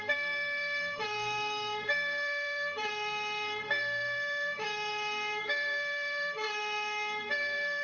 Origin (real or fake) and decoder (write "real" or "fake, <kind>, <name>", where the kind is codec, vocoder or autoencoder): fake, codec, SNAC